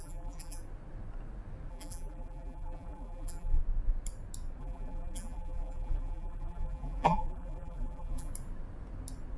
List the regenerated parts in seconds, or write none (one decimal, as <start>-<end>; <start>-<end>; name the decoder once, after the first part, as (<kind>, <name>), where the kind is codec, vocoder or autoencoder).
0.0-0.6 (vocoder, BigVGAN v2); 1.7-3.6; 4.6-8.3